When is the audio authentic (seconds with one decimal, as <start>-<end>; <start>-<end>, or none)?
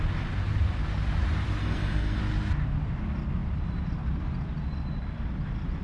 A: 0.0-1.6; 2.2-5.8